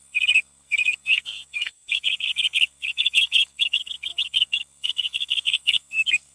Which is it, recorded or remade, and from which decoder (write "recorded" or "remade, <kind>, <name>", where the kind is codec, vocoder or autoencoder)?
remade, codec, SNAC